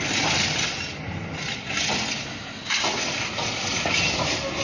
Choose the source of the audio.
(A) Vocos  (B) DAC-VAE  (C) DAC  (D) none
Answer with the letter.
D